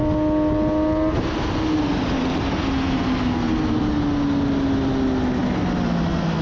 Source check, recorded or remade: recorded